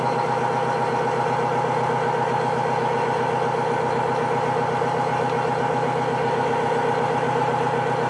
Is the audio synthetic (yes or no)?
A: no